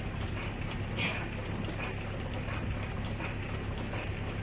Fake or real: real